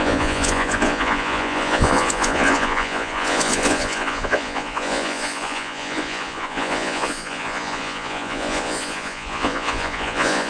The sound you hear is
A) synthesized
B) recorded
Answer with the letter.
A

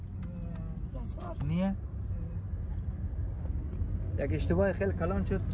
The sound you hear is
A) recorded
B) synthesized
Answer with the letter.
A